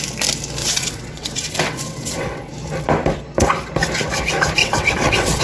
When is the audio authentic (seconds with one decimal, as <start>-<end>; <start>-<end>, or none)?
0.0-0.6; 2.5-4.6